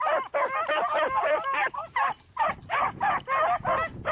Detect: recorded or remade recorded